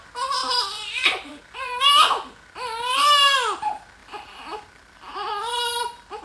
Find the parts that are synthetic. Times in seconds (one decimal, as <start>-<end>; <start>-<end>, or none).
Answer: 0.4-1.8; 4.0-5.3